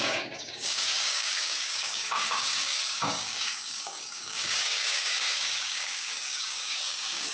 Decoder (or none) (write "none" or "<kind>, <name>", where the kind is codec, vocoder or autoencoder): codec, DAC